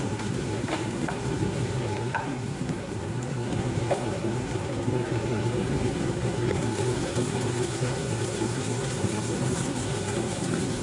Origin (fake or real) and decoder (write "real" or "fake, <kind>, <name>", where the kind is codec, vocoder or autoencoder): fake, codec, SNAC